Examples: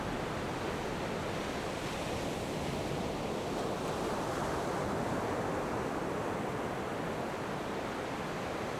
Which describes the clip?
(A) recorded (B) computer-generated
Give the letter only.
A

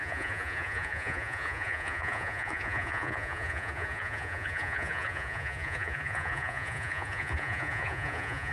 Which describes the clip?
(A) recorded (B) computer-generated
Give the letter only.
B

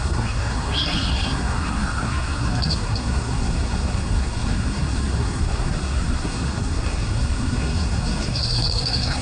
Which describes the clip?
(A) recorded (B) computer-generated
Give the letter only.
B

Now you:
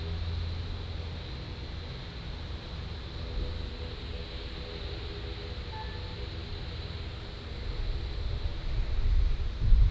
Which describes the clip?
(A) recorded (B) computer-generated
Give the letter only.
A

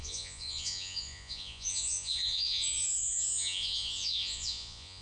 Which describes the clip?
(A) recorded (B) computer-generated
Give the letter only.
B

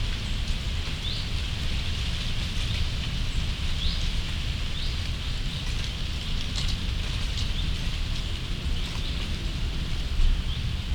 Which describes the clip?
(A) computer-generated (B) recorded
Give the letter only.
B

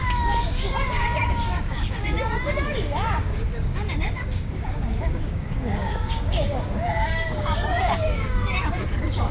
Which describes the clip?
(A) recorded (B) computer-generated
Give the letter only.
B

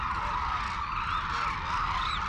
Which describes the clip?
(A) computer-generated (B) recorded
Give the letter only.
B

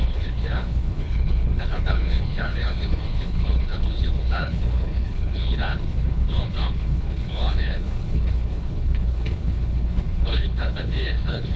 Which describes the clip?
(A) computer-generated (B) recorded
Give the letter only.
A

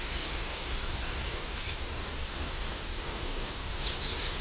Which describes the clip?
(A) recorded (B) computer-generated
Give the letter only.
B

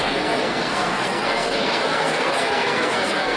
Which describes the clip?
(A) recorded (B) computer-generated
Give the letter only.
B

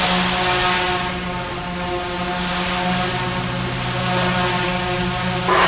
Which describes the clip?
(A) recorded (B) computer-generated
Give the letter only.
A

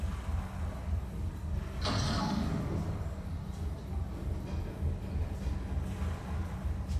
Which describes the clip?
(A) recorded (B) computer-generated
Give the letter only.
A